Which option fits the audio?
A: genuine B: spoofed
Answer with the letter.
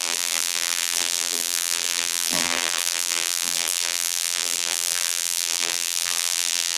B